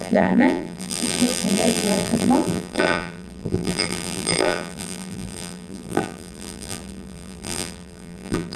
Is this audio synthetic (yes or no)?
yes